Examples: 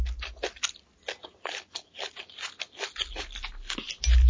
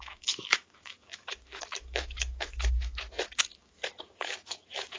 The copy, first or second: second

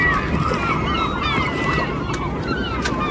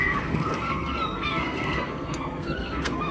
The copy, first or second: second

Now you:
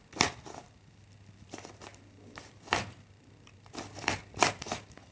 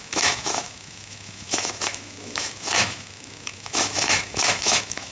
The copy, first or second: second